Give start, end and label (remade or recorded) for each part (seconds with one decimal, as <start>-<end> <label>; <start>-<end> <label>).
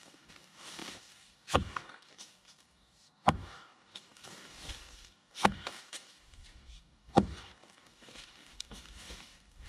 0.0-9.7 remade